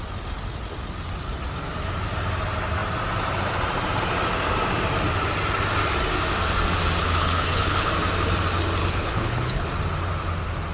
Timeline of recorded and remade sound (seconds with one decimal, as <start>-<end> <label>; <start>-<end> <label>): 0.0-7.0 recorded; 7.0-7.9 remade; 7.9-8.8 recorded; 8.8-9.7 remade; 9.7-10.7 recorded